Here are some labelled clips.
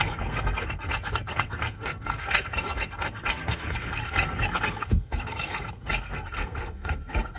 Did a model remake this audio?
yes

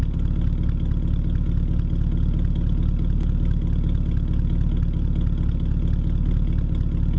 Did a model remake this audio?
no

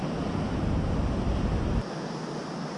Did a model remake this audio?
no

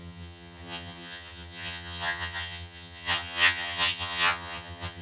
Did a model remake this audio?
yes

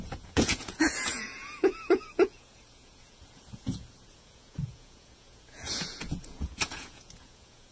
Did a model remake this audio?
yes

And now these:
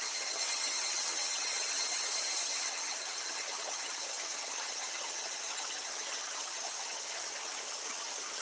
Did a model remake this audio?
yes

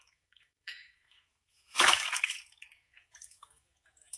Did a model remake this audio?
yes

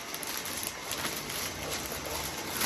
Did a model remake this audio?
no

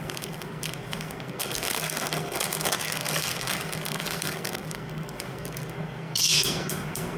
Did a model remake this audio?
yes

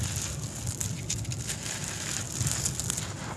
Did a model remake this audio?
no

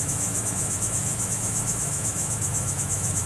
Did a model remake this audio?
yes